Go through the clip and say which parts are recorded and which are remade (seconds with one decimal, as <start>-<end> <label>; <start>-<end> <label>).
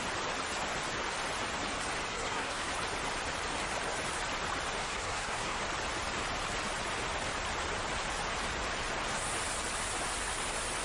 0.0-2.1 recorded; 2.1-2.7 remade; 2.7-4.8 recorded; 4.8-5.6 remade; 5.6-10.8 recorded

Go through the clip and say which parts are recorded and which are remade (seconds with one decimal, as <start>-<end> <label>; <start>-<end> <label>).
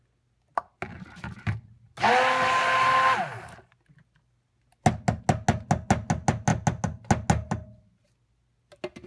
0.0-9.1 recorded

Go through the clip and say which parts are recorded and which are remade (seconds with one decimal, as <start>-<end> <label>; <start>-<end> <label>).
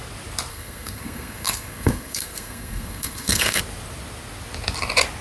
0.0-0.5 recorded; 0.5-3.6 remade; 3.6-5.2 recorded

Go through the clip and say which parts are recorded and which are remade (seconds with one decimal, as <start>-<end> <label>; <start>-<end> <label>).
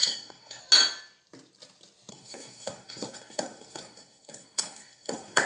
0.0-0.6 remade; 0.6-2.1 recorded; 2.1-5.5 remade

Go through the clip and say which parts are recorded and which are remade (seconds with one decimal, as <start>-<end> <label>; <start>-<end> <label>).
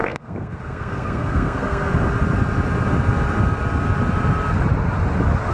0.0-1.9 remade; 1.9-5.5 recorded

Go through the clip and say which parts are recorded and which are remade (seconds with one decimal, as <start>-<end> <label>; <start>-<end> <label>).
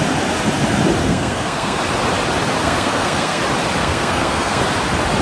0.0-1.0 recorded; 1.0-1.8 remade; 1.8-2.6 recorded; 2.6-3.4 remade; 3.4-3.8 recorded; 3.8-4.6 remade; 4.6-5.2 recorded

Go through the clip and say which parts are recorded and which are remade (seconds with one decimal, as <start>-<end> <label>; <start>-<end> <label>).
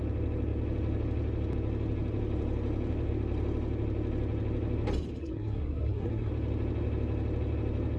0.0-5.2 recorded; 5.2-6.3 remade; 6.3-8.0 recorded